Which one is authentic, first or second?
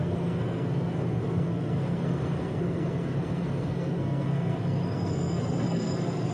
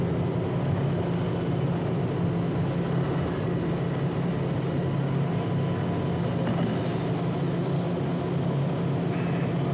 second